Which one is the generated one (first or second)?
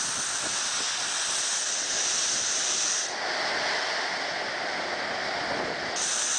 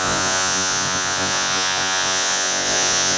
second